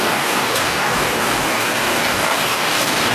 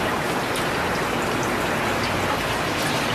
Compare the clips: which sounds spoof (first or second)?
first